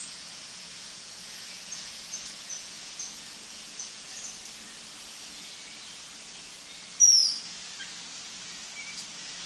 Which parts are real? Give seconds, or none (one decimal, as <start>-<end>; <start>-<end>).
4.1-5.0; 5.5-9.1